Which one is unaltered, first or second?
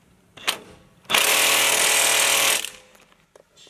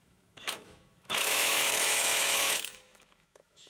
first